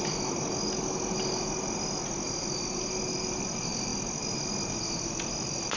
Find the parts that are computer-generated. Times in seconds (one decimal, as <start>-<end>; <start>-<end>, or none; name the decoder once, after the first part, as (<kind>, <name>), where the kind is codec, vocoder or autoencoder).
none